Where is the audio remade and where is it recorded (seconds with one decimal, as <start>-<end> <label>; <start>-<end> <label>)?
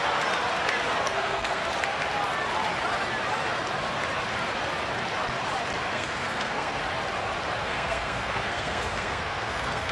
0.0-1.0 recorded; 1.0-1.6 remade; 1.6-5.9 recorded; 5.9-6.8 remade; 6.8-7.6 recorded; 7.6-9.9 remade